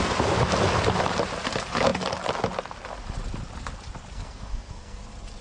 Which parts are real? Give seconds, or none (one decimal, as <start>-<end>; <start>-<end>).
0.0-4.1; 5.0-5.4